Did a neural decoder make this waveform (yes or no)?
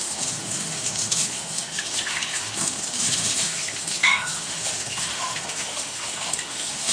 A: yes